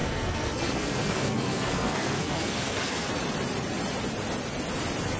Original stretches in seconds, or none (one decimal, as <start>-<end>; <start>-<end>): 3.1-5.2